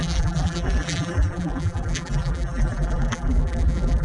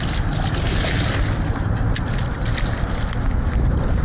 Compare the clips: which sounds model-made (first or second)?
first